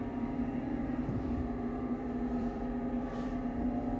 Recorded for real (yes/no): no